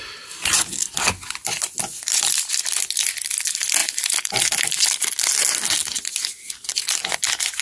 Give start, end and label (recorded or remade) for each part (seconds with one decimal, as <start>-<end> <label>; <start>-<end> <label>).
0.0-7.6 recorded